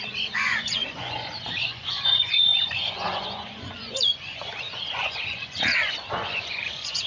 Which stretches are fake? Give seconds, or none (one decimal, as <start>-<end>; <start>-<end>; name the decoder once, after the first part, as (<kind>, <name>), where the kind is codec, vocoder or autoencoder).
0.0-7.1 (vocoder, Vocos)